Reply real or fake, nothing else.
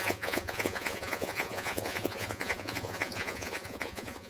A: fake